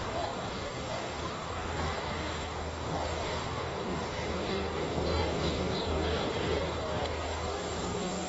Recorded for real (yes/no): no